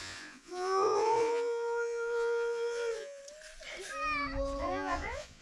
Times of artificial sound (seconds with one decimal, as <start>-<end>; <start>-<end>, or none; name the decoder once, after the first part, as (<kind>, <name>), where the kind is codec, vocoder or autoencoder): 0.0-3.2 (vocoder, Vocos); 4.6-5.4